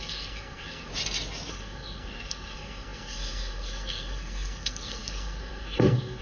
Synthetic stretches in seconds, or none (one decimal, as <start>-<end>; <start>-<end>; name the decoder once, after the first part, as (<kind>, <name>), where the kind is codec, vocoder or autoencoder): 0.0-0.9 (codec, SNAC); 1.5-6.2